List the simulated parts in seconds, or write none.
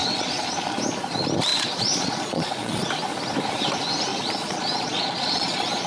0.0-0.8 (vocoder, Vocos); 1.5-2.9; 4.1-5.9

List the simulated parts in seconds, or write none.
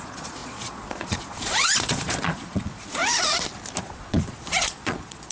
0.0-3.0 (vocoder, Vocos); 3.8-5.3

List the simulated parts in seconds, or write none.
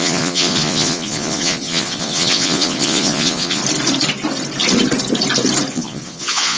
0.0-3.6 (vocoder, Vocos); 5.7-6.6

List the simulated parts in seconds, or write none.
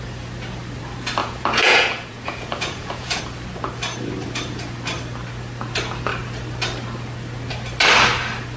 1.2-3.2 (vocoder, Vocos)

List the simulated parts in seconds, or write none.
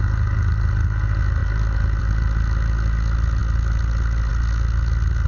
none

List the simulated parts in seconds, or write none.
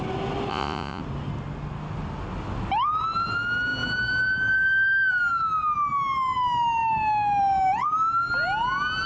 0.5-1.0 (vocoder, Vocos)